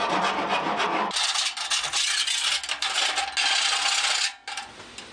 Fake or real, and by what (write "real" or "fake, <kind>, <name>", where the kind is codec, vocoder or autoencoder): real